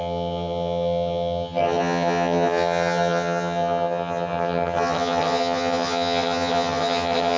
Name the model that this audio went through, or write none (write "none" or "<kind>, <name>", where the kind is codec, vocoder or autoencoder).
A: vocoder, HiFi-GAN